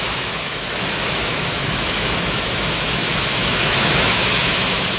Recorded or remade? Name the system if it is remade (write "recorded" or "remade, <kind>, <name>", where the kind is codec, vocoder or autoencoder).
remade, autoencoder, DAC-VAE